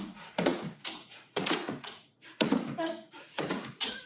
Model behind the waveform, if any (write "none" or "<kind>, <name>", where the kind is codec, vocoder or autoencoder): vocoder, Vocos